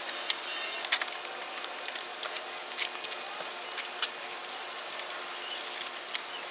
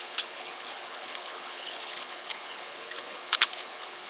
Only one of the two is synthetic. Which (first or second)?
second